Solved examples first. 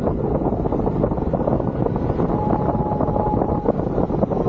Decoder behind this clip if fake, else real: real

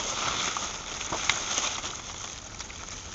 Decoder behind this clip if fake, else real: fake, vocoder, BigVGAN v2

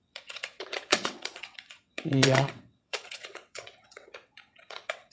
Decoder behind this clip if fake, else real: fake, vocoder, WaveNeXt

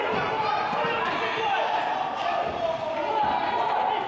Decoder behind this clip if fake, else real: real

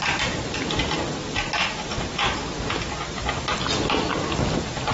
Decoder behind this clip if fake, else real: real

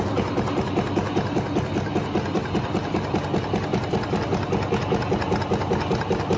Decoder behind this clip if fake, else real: real